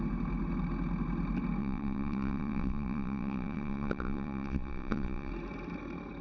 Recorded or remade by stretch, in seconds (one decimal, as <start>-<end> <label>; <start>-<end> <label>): 0.0-1.6 recorded; 1.6-5.3 remade; 5.3-6.2 recorded

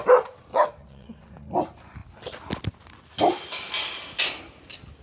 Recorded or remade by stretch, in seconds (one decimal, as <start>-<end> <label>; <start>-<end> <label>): 0.0-0.5 recorded; 0.5-1.3 remade; 1.3-5.0 recorded

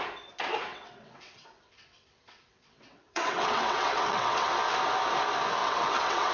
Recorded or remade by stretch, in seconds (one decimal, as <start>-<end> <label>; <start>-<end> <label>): 0.0-0.7 recorded; 0.7-4.5 remade; 4.5-5.6 recorded; 5.6-6.3 remade

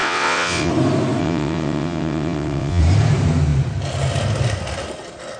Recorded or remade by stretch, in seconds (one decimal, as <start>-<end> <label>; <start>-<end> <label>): 0.0-0.7 remade; 0.7-1.2 recorded; 1.2-2.8 remade; 2.8-5.4 recorded

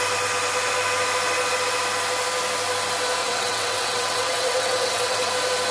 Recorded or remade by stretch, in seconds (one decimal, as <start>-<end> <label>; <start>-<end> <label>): 0.0-3.2 recorded; 3.2-5.3 remade; 5.3-5.7 recorded

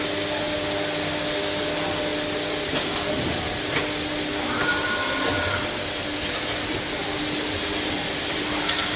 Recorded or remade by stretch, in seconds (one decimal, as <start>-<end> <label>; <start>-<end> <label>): 0.0-9.0 recorded